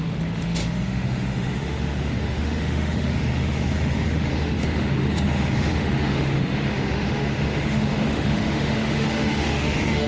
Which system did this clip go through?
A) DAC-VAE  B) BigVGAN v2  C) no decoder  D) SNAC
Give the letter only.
A